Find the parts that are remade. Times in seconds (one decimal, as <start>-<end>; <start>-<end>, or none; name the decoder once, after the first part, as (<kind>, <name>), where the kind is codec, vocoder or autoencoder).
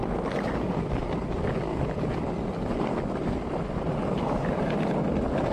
1.7-2.2 (vocoder, Vocos)